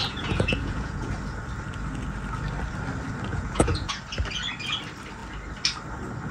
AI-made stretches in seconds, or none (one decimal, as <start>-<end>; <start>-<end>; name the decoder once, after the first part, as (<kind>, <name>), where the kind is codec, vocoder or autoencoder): 0.0-1.1 (vocoder, Vocos); 3.3-4.0